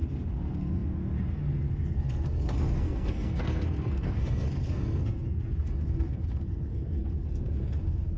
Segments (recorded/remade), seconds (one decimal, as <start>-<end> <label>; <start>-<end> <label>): 0.0-8.2 remade

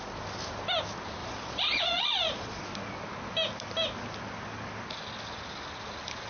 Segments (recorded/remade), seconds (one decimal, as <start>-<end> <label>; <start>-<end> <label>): 0.0-1.2 recorded; 1.2-2.6 remade; 2.6-6.3 recorded

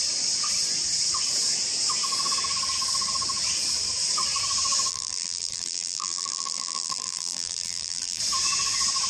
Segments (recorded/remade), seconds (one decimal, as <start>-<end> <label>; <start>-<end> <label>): 0.0-4.9 recorded; 4.9-8.2 remade; 8.2-9.1 recorded

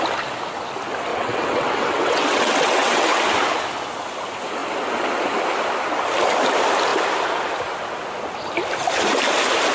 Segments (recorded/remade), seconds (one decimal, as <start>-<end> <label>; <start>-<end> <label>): 0.0-1.1 recorded; 1.1-3.2 remade; 3.2-9.7 recorded

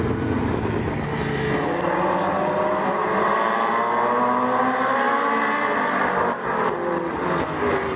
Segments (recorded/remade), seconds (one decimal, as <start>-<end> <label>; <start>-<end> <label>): 0.0-8.0 recorded

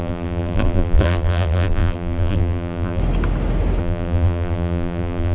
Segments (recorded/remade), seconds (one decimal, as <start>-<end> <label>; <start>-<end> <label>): 0.0-3.0 remade; 3.0-3.8 recorded; 3.8-5.3 remade